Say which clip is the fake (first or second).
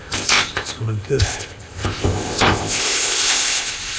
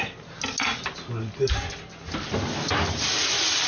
first